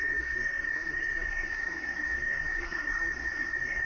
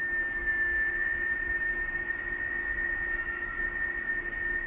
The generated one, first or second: first